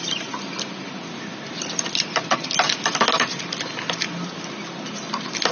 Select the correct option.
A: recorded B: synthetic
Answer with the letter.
A